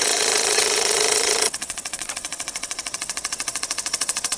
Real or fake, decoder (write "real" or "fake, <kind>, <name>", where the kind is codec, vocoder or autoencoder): fake, vocoder, WaveNeXt